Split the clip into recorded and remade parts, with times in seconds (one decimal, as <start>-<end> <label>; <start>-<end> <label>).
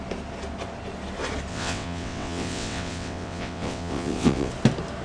0.0-1.5 recorded; 1.5-4.5 remade; 4.5-5.0 recorded